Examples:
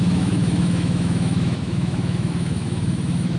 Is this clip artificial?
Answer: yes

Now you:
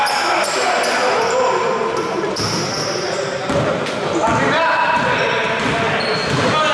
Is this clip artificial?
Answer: no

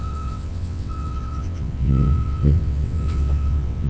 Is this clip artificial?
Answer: yes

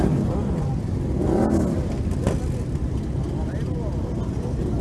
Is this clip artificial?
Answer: no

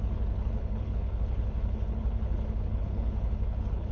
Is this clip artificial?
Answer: yes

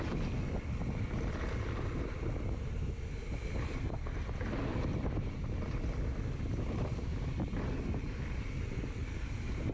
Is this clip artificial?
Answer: no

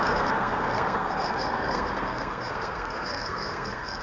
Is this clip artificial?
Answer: yes